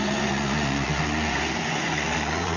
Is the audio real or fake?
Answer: fake